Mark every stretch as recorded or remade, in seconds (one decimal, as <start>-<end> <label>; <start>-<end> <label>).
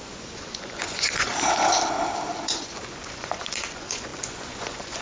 0.0-1.3 remade; 1.3-2.4 recorded; 2.4-5.0 remade